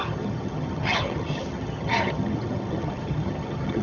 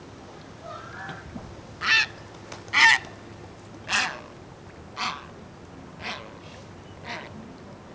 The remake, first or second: first